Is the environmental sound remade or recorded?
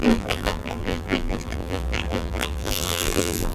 remade